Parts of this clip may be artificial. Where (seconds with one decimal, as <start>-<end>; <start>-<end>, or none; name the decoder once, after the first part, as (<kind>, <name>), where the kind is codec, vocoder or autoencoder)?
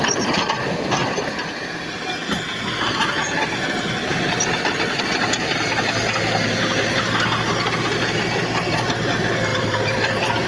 1.0-1.7 (vocoder, BigVGAN v2); 9.5-10.5